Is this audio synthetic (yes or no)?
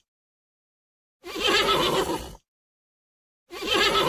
no